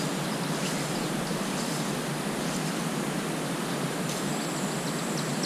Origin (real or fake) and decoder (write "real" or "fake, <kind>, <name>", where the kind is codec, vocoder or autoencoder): real